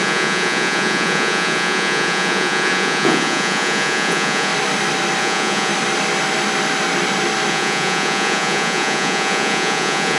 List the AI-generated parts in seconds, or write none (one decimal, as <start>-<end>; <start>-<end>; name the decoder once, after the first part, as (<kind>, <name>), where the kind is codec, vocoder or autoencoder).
0.0-4.5 (vocoder, Vocos); 5.2-5.7; 7.5-10.2